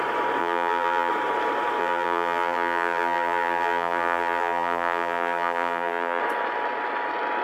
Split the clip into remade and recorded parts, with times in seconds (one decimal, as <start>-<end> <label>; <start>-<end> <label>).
0.0-0.4 recorded; 0.4-1.1 remade; 1.1-1.8 recorded; 1.8-6.2 remade; 6.2-7.4 recorded